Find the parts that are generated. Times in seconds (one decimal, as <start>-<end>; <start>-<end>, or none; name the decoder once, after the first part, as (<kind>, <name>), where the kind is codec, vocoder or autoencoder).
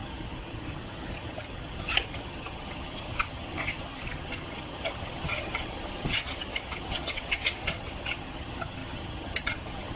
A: 0.0-10.0 (vocoder, HiFi-GAN)